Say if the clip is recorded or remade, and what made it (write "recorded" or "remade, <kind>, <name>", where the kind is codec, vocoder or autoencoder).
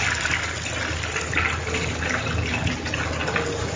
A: recorded